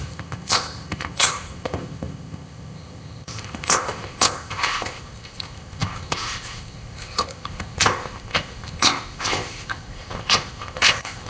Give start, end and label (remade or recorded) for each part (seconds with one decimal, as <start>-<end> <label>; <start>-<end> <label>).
0.0-11.3 remade